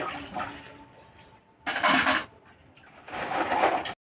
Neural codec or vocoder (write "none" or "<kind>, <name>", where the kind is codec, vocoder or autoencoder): none